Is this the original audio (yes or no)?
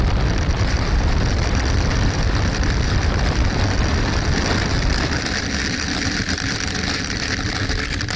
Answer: no